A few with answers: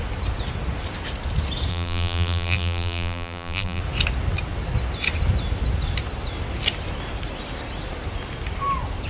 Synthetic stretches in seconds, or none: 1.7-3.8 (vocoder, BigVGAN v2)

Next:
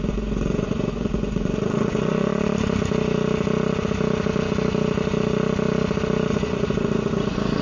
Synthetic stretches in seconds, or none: 0.0-2.3 (vocoder, Vocos); 6.3-7.6

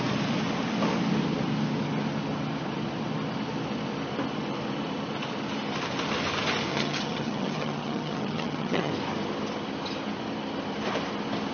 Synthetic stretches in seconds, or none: 6.7-8.9 (vocoder, HiFi-GAN)

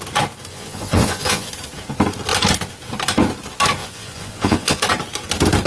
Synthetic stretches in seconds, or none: 0.5-1.5 (vocoder, Vocos); 3.8-4.8